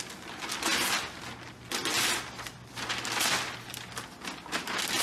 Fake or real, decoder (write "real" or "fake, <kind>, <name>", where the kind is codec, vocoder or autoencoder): real